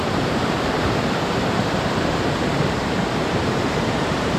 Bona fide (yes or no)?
no